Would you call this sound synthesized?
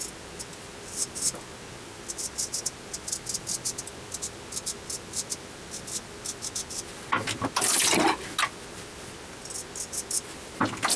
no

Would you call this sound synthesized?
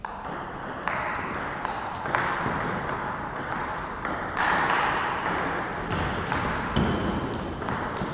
yes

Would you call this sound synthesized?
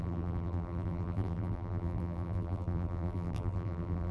yes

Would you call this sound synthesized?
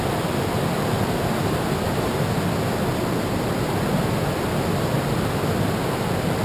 no